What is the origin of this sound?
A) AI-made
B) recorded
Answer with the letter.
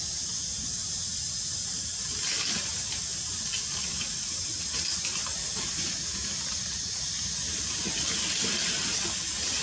B